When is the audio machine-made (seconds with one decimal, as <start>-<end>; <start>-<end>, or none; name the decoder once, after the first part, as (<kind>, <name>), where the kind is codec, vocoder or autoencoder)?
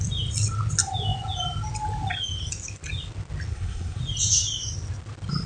3.5-4.0 (codec, SNAC)